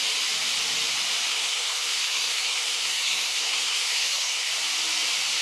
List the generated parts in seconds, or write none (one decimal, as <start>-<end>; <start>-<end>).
1.3-4.5